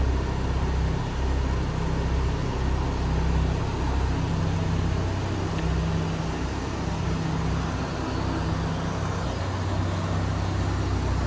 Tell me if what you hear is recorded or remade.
recorded